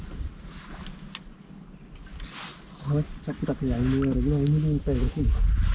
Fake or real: real